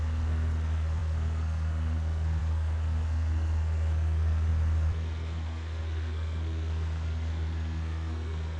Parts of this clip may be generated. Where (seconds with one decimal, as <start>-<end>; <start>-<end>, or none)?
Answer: 0.0-8.6